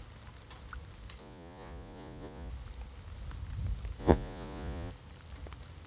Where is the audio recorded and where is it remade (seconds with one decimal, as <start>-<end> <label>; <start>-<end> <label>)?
0.0-1.2 recorded; 1.2-2.5 remade; 2.5-4.0 recorded; 4.0-4.9 remade; 4.9-5.9 recorded